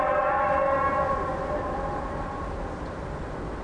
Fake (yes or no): no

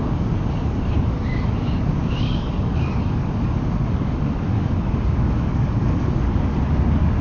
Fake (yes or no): yes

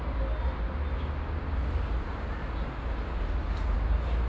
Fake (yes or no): no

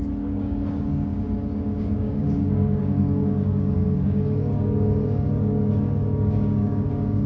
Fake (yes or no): yes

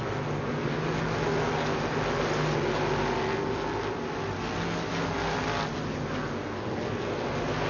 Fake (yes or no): no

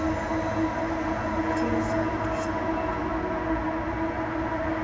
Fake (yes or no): no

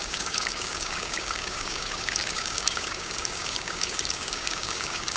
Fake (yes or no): yes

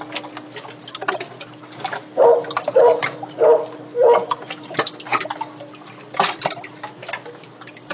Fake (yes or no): no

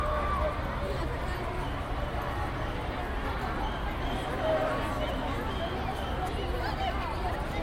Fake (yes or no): no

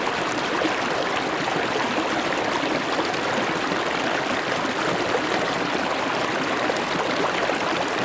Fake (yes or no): no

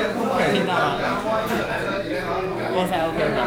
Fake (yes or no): yes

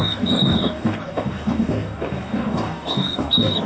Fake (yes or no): yes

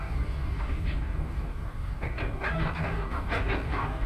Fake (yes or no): yes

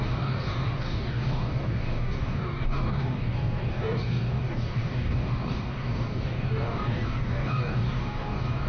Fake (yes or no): yes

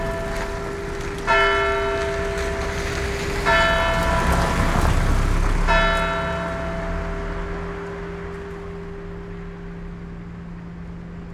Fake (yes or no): no